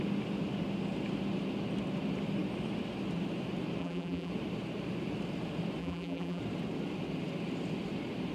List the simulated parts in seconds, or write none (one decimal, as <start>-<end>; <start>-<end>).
3.8-4.3; 5.8-6.4